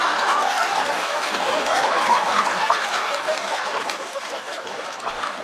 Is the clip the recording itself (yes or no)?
no